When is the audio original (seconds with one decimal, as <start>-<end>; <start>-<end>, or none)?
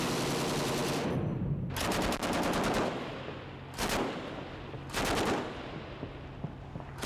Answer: 0.0-7.1